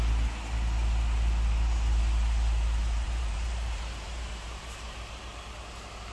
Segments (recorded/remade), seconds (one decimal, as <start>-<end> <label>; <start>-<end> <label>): 0.0-2.8 recorded; 2.8-5.2 remade; 5.2-6.1 recorded